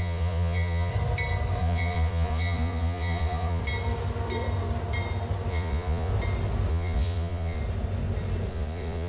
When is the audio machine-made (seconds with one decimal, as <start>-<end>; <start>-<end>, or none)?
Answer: 0.0-0.9; 1.6-3.6; 5.5-6.1; 6.7-7.6; 8.5-9.1